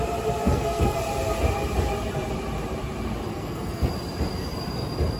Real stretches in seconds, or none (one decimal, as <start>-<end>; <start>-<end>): 0.0-0.4; 1.0-3.3; 3.9-5.2